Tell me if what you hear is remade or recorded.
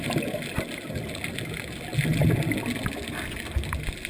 recorded